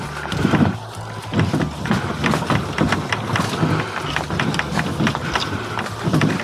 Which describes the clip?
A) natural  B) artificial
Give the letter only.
A